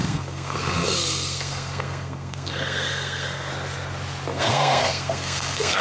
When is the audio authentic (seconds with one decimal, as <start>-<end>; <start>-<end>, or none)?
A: 3.5-4.3